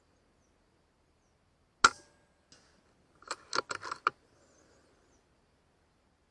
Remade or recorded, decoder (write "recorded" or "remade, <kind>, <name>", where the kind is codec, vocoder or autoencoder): recorded